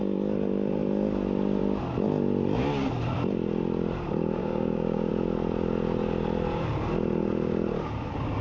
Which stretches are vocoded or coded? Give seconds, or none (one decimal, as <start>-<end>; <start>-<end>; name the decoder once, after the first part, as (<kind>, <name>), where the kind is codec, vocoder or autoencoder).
4.4-5.1 (codec, DAC)